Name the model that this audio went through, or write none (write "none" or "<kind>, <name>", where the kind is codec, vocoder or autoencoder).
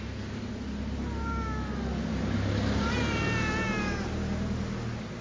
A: none